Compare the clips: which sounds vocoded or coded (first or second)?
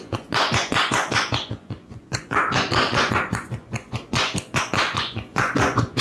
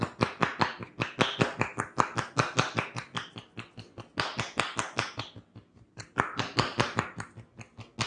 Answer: first